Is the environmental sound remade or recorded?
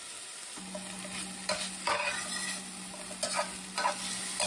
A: recorded